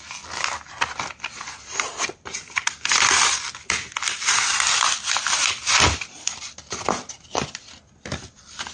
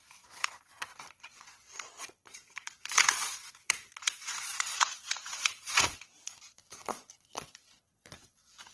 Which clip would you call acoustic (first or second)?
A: first